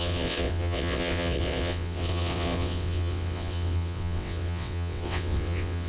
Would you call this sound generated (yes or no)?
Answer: yes